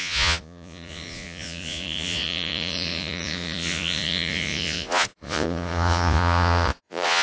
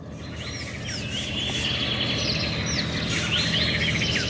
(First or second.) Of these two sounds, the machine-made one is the first